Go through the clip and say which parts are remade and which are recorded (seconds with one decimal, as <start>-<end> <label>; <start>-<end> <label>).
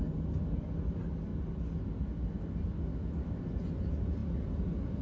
0.0-2.9 recorded; 2.9-3.4 remade; 3.4-5.0 recorded